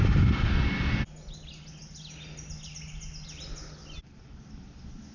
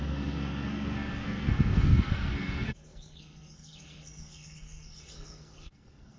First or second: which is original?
first